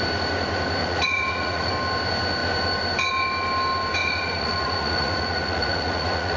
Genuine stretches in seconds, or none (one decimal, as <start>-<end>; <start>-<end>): 0.0-0.8; 1.7-4.0